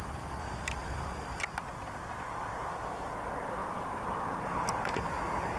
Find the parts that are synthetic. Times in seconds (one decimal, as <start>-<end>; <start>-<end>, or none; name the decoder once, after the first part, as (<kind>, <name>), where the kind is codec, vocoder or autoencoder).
0.8-1.4 (vocoder, BigVGAN v2); 3.6-4.5